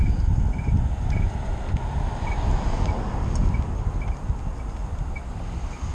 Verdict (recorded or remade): recorded